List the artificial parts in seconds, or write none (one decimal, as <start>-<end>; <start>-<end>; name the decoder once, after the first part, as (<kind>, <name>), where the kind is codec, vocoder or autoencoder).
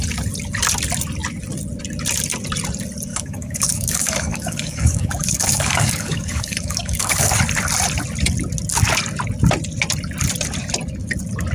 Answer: 3.1-7.4 (codec, DAC)